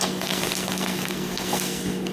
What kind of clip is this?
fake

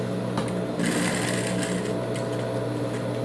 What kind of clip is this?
real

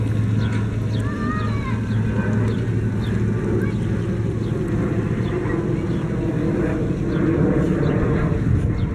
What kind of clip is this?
real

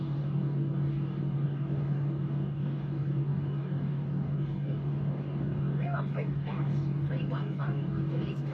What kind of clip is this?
fake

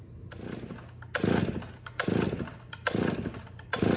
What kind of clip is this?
real